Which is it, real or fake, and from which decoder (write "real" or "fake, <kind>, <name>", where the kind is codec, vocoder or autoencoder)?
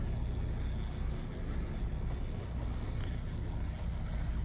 real